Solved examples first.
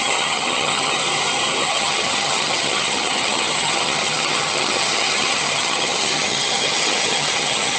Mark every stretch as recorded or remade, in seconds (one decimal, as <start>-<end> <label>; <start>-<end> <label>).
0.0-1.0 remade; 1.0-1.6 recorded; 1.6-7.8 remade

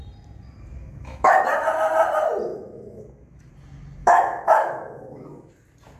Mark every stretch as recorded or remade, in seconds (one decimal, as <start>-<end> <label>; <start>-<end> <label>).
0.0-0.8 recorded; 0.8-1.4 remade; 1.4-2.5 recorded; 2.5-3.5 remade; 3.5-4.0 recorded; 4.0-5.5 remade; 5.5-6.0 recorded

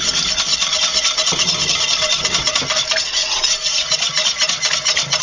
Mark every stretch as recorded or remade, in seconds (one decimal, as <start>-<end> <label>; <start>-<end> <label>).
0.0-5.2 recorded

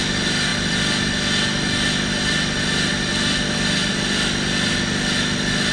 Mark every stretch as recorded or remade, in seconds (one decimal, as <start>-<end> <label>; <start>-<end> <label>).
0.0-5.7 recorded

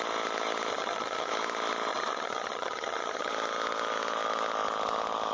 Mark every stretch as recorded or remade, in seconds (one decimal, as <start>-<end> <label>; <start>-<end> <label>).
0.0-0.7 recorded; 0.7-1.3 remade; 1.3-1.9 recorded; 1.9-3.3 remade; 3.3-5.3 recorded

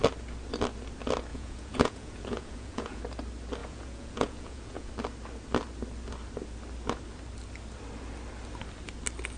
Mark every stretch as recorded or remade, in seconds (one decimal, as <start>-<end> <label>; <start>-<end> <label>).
0.0-1.3 recorded; 1.3-3.0 remade; 3.0-3.6 recorded; 3.6-4.9 remade; 4.9-9.4 recorded

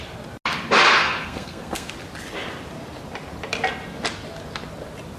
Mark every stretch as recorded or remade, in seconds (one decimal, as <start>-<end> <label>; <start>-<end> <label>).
0.0-1.0 recorded; 1.0-1.9 remade; 1.9-5.2 recorded